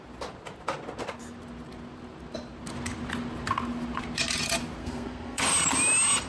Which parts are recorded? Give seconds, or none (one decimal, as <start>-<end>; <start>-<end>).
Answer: 0.0-4.8; 5.4-6.3